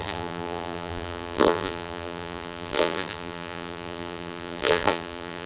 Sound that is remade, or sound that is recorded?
remade